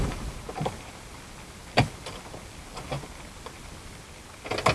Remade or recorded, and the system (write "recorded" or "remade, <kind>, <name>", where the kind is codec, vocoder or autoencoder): recorded